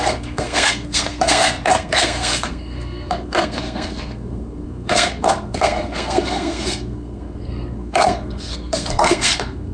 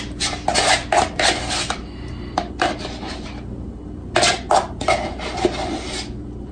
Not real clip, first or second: first